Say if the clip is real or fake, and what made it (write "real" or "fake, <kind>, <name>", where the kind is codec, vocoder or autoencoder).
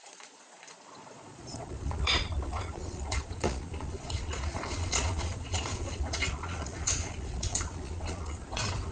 fake, vocoder, Vocos